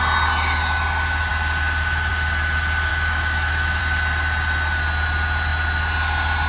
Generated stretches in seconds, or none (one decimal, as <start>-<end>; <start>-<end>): 2.9-3.8